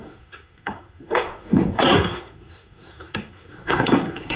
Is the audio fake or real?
fake